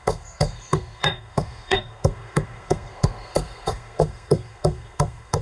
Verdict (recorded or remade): remade